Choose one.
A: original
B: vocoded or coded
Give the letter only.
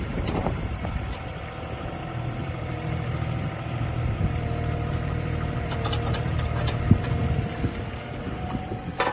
B